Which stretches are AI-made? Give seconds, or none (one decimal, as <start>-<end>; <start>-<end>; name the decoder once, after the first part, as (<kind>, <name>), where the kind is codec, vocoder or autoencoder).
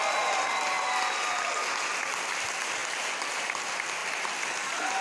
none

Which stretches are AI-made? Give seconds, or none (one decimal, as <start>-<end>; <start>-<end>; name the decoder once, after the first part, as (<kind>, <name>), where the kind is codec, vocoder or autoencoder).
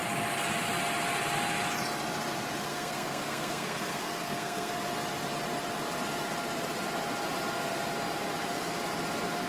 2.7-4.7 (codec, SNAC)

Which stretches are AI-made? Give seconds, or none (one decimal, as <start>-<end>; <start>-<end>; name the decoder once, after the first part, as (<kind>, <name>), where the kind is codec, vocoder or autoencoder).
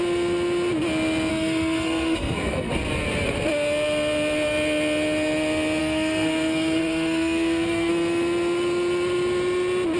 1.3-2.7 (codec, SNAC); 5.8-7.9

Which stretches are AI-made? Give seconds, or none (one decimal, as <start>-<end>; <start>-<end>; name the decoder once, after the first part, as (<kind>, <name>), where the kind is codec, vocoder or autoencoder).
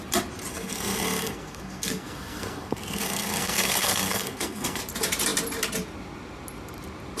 0.5-4.8 (codec, SNAC)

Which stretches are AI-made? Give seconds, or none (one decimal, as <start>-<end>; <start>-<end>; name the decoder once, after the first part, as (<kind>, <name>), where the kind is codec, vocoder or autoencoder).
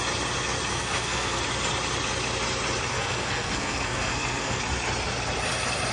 0.7-1.4 (codec, SNAC); 2.9-4.6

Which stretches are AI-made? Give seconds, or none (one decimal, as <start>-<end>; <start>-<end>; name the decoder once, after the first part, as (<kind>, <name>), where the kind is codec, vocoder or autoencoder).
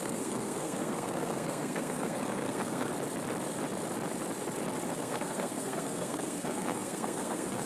0.0-2.9 (codec, SNAC); 4.9-7.7